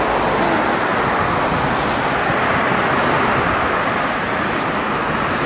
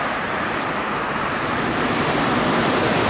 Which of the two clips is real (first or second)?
first